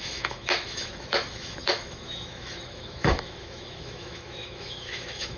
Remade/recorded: remade